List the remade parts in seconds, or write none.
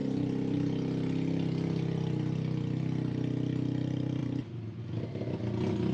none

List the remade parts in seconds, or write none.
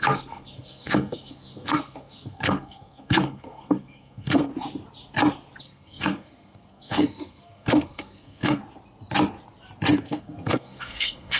0.0-4.5 (codec, SNAC); 5.6-8.6; 10.0-11.4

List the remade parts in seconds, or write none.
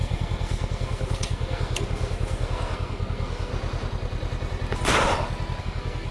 0.0-3.5 (codec, SNAC); 5.6-6.1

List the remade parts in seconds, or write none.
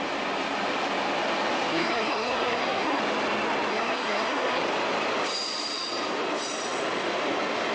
1.7-3.0 (codec, SNAC); 3.7-4.6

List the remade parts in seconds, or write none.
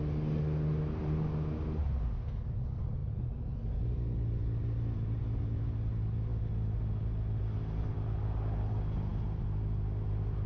none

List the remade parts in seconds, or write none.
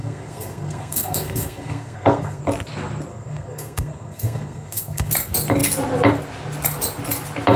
0.0-2.4 (codec, SNAC); 3.1-5.1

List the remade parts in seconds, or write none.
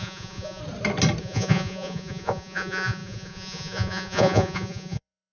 0.0-0.6 (vocoder, Vocos); 1.2-5.3